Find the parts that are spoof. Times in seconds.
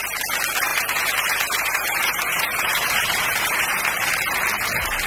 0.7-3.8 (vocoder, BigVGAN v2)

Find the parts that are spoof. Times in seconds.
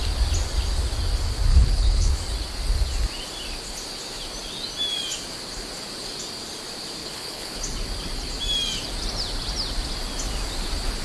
1.5-2.1 (codec, HILCodec); 7.0-7.6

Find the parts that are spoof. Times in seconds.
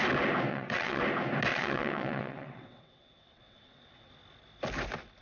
0.5-1.0 (vocoder, WaveNeXt); 1.5-4.1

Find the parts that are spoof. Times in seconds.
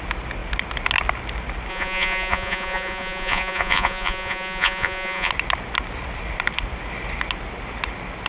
1.7-5.3 (vocoder, Vocos)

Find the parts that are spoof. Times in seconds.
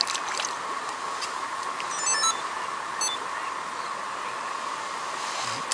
none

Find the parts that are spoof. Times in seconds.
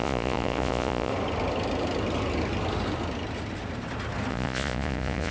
0.0-1.1 (vocoder, Vocos); 4.3-5.3